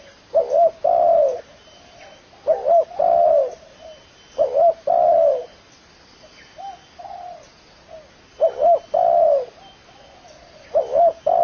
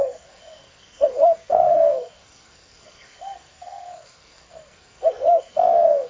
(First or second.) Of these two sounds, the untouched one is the first